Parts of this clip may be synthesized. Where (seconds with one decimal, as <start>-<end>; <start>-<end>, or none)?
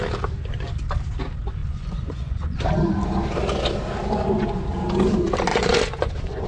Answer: 1.6-2.6; 5.5-6.5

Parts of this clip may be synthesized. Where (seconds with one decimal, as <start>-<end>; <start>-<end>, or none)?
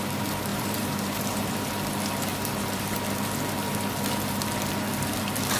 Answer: 0.5-1.7; 2.3-2.9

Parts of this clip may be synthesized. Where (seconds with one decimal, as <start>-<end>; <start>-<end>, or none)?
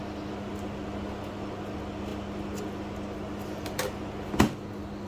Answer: none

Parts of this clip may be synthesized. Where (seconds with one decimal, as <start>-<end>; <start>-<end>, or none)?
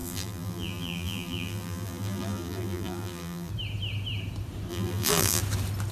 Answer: 0.0-3.5; 4.7-5.4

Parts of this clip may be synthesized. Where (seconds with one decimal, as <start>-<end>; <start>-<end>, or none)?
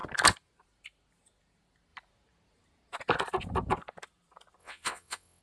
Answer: 4.6-5.4